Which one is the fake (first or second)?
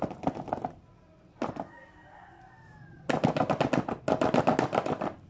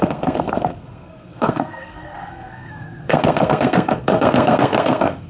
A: second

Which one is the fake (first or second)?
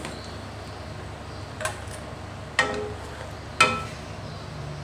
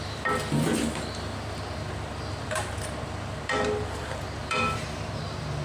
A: second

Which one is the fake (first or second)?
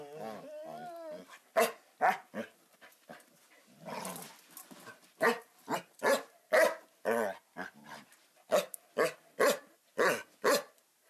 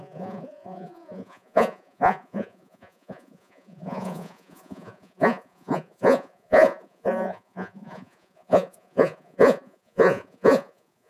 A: second